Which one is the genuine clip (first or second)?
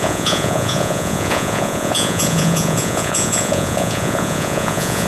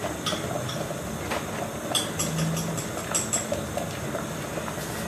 second